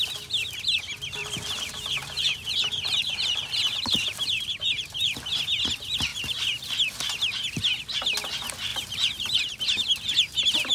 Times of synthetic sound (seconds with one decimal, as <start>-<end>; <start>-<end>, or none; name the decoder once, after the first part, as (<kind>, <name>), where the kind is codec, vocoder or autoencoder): 1.2-4.9 (vocoder, BigVGAN v2); 8.7-9.4